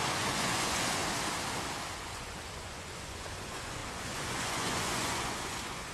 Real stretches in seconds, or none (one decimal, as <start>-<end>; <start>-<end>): 1.0-2.0

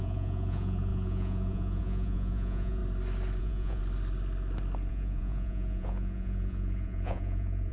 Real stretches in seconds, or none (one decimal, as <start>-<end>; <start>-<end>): 2.8-3.4; 3.8-4.9

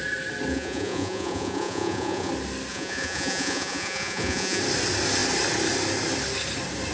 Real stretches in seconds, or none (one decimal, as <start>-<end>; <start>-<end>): 0.0-0.5; 2.3-2.7; 4.6-6.9

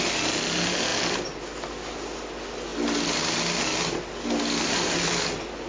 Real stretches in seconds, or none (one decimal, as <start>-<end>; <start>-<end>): 0.0-5.7

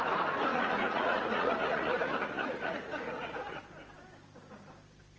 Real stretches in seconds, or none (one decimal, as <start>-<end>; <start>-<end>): 0.0-0.5; 3.6-5.2

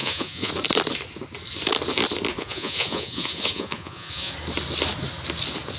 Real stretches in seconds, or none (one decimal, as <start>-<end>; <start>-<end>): 0.5-2.3; 4.3-5.8

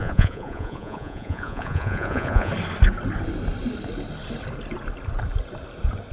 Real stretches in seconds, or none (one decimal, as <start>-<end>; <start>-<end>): 2.5-6.1